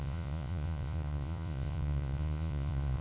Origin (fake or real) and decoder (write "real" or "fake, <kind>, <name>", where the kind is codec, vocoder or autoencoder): fake, vocoder, Vocos